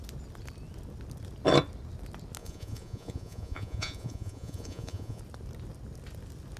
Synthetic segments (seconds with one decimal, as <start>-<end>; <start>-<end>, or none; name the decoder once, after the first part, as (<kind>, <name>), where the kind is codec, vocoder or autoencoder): 2.4-5.2 (vocoder, Vocos)